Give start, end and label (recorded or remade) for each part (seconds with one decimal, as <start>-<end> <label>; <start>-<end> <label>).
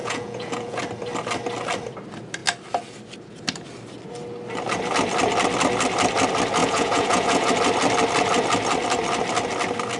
0.0-0.8 remade; 0.8-6.6 recorded; 6.6-7.5 remade; 7.5-10.0 recorded